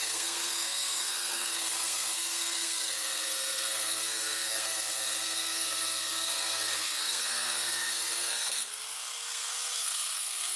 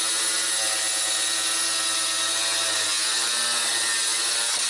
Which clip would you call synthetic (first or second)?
first